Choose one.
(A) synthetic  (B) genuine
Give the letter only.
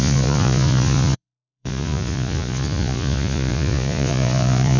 A